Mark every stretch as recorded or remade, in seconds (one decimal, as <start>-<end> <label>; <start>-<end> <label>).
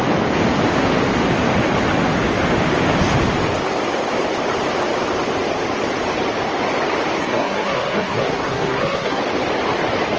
0.0-7.2 recorded; 7.2-9.2 remade; 9.2-10.2 recorded